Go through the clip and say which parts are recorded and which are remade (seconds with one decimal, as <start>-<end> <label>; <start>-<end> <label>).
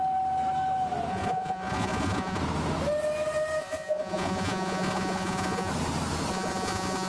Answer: 0.0-1.1 recorded; 1.1-2.4 remade; 2.4-3.6 recorded; 3.6-5.7 remade; 5.7-6.3 recorded; 6.3-7.1 remade